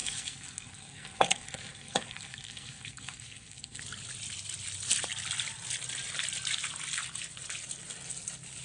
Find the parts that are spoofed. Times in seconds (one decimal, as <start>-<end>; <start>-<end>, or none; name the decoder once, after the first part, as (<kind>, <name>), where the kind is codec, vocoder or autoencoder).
0.0-3.8 (codec, SNAC)